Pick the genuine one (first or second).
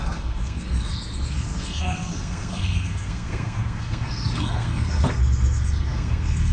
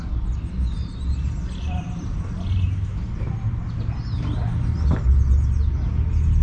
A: second